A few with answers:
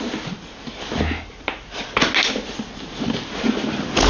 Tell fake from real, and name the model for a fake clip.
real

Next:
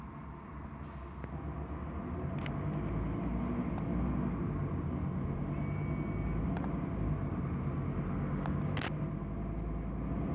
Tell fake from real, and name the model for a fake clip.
real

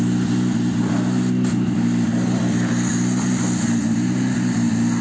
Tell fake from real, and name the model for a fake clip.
real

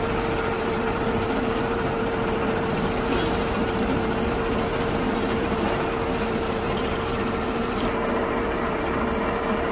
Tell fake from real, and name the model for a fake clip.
fake, vocoder, BigVGAN v2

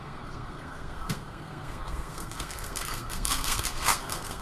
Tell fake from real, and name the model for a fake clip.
fake, codec, SNAC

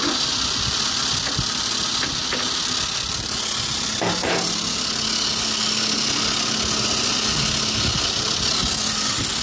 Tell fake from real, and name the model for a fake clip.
real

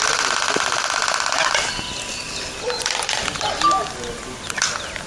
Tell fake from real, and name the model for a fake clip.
real